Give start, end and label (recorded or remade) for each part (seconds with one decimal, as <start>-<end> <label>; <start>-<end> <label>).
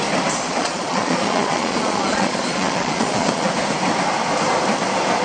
0.0-0.5 recorded; 0.5-3.5 remade; 3.5-5.2 recorded